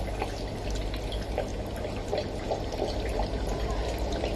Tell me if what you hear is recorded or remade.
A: recorded